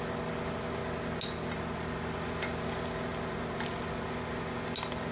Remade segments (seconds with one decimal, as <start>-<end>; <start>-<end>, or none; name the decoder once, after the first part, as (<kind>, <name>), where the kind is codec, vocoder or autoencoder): none